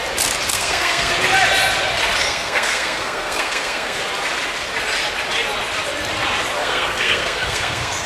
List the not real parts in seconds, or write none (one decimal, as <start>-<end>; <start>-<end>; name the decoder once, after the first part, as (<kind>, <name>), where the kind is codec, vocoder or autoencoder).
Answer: 0.5-1.1 (codec, SNAC); 2.2-4.0; 6.6-8.1